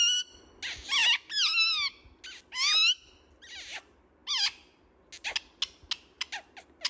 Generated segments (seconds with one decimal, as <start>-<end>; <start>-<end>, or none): none